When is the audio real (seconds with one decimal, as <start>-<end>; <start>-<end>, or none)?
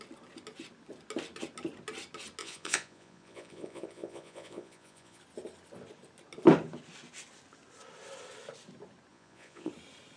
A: 0.0-2.4; 5.2-9.1; 9.7-10.2